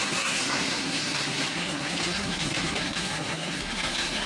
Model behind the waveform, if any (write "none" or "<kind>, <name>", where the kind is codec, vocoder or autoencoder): codec, SNAC